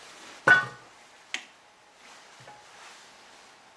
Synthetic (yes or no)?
no